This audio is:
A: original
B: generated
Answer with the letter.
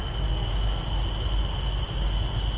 A